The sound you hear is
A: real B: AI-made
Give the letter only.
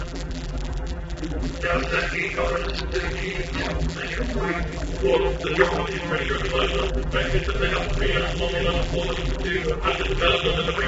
B